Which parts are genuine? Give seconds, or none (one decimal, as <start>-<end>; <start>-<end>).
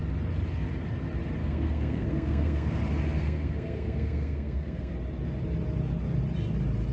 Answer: 0.0-1.4; 2.8-3.2; 4.9-6.9